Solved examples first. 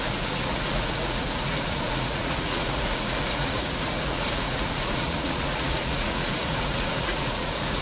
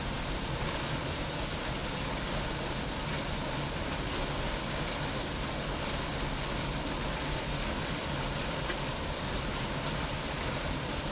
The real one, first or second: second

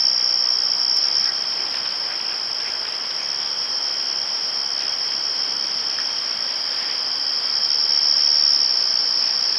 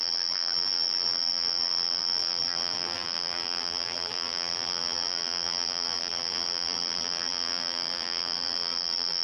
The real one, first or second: first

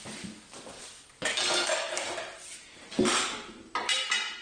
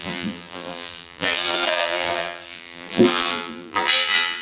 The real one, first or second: first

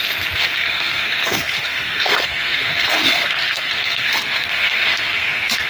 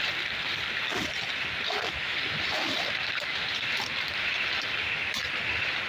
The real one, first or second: second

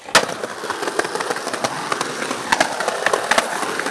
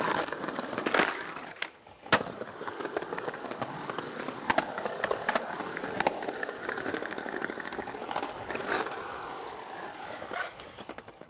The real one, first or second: first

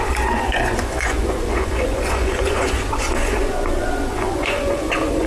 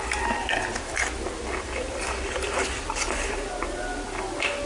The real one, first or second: second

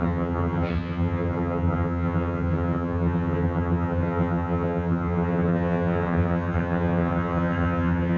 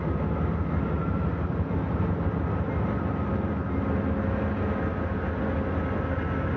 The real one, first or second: second